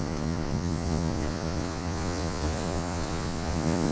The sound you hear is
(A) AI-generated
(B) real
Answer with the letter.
A